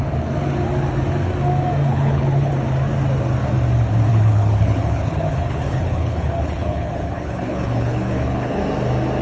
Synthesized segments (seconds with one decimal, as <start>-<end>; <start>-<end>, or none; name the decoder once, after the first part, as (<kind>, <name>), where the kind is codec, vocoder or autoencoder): 1.9-2.5 (codec, HILCodec); 4.1-8.6

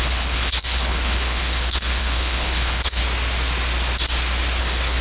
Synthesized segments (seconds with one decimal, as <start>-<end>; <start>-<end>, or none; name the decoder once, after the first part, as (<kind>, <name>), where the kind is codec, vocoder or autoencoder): 0.0-3.0 (codec, HILCodec); 4.6-5.0